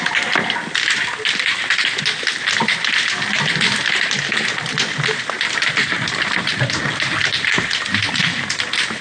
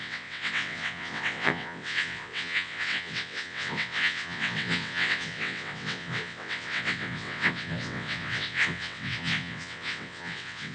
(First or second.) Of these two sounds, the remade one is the second